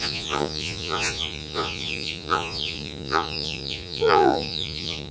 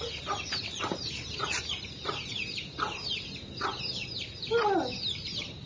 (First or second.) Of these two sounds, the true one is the second